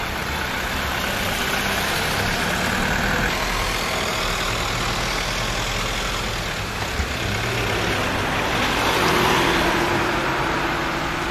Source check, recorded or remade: recorded